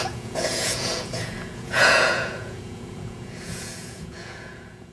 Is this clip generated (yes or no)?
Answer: yes